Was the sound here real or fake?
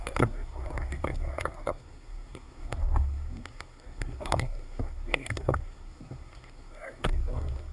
fake